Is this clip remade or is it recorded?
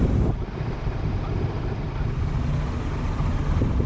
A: recorded